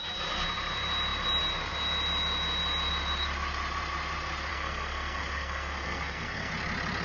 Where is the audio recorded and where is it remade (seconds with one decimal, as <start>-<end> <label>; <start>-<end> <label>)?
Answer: 0.0-4.5 recorded; 4.5-6.5 remade; 6.5-7.0 recorded